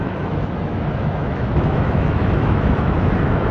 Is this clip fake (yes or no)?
yes